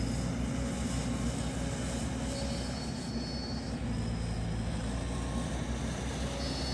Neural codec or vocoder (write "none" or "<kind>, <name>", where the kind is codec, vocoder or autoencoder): none